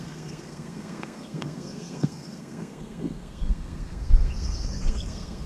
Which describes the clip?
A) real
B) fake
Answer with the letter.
B